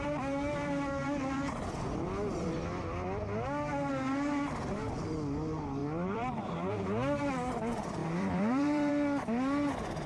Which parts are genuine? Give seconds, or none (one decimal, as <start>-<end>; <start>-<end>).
0.0-5.8; 6.7-8.0; 8.9-10.1